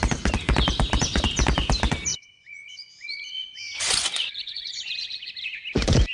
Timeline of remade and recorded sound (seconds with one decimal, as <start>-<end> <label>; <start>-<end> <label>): 0.0-2.1 recorded; 2.1-5.3 remade; 5.3-6.1 recorded